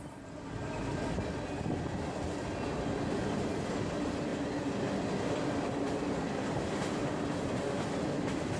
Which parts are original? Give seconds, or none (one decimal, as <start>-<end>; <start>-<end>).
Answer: 0.0-4.3